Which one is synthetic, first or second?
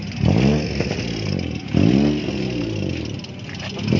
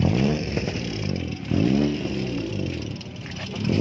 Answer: second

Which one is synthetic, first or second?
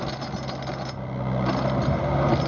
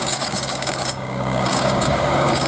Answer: second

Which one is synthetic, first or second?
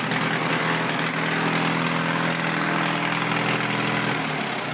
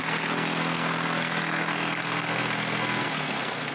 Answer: second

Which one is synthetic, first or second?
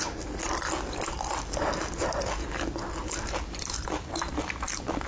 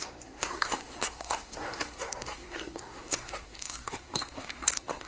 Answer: second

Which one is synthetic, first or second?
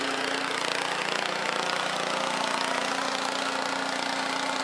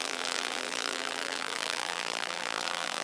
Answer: second